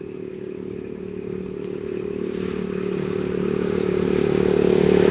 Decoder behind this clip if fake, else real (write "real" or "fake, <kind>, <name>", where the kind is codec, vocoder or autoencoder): fake, codec, DAC